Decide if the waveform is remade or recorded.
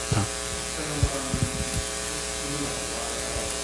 recorded